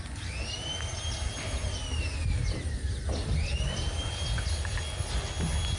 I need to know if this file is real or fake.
real